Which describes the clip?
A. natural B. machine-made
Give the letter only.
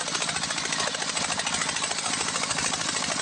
A